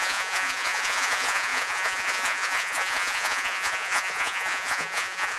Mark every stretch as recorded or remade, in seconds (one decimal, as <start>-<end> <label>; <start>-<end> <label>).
0.0-5.4 remade